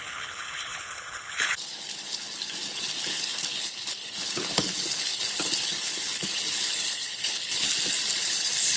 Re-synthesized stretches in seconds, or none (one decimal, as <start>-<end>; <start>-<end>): 0.0-7.7; 8.2-8.8